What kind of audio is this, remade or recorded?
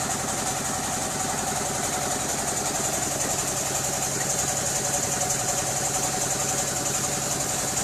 recorded